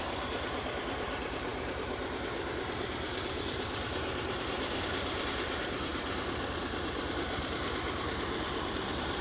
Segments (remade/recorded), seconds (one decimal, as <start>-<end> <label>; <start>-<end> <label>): 0.0-5.9 remade; 5.9-6.6 recorded; 6.6-9.2 remade